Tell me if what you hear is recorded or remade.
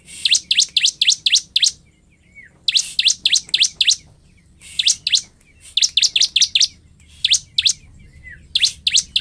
recorded